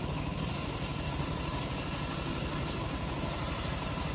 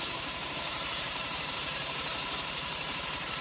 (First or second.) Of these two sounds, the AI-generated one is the second